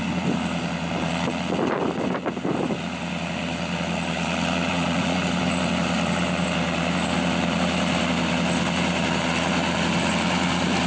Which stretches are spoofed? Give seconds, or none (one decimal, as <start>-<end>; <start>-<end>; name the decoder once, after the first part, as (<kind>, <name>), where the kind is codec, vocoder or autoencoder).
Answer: 4.7-5.2 (vocoder, Vocos)